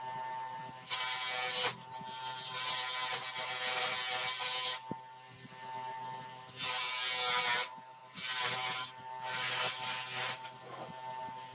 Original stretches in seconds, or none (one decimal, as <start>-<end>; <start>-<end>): 0.0-11.5